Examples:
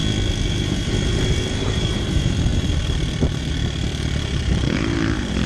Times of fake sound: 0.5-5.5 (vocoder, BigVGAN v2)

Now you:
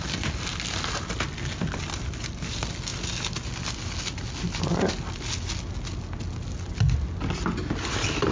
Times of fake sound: none